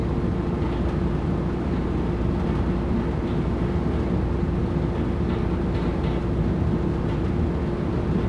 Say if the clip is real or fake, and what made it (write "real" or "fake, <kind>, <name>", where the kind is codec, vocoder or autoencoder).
real